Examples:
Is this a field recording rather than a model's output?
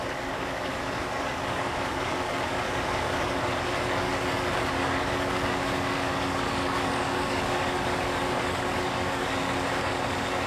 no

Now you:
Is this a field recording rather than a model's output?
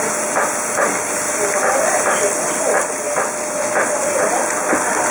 yes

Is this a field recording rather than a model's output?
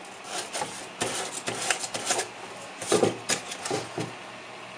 yes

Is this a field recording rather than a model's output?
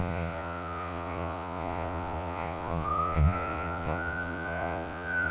no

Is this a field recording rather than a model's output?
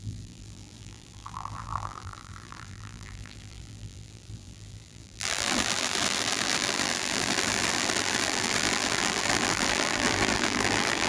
no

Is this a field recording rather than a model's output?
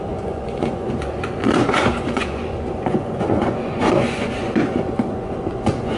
no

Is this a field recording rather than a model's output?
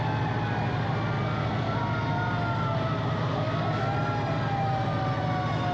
yes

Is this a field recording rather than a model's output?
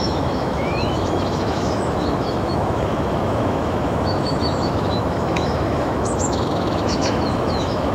no